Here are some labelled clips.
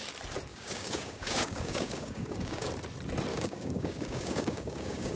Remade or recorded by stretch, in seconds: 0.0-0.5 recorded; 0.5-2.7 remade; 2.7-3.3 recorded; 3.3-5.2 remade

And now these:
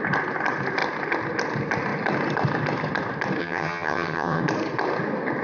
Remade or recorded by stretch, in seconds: 0.0-3.4 recorded; 3.4-4.4 remade; 4.4-5.4 recorded

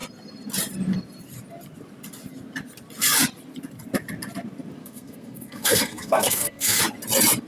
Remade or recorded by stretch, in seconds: 0.0-4.8 recorded; 4.8-6.8 remade; 6.8-7.5 recorded

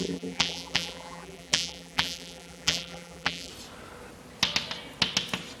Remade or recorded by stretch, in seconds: 0.0-3.5 remade; 3.5-5.6 recorded

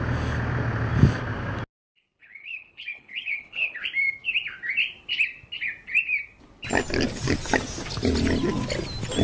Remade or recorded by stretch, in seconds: 0.0-2.2 recorded; 2.2-3.8 remade; 3.8-9.2 recorded

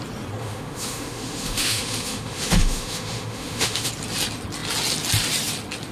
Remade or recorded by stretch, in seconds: 0.0-0.4 recorded; 0.4-3.9 remade; 3.9-5.9 recorded